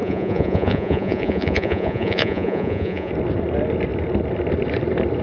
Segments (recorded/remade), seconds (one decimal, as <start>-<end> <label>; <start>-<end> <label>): 0.0-3.1 remade; 3.1-5.2 recorded